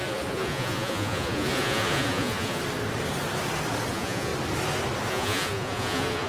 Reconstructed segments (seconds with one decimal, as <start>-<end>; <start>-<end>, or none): 0.0-2.6; 3.9-4.3; 5.1-6.3